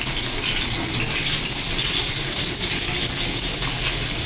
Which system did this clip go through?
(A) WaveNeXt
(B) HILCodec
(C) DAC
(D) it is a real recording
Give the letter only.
D